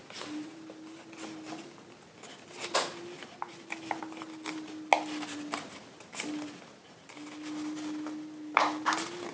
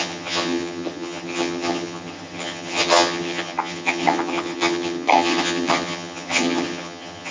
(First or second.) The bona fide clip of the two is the first